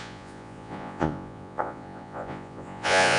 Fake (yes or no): yes